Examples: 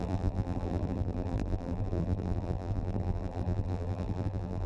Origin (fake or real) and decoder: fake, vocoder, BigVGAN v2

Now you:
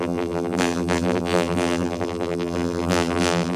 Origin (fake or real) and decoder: fake, vocoder, BigVGAN v2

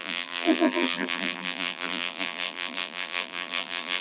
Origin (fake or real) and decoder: fake, vocoder, BigVGAN v2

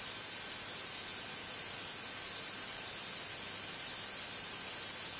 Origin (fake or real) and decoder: real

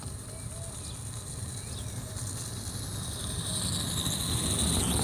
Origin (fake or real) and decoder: real